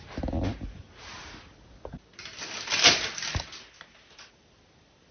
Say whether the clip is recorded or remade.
recorded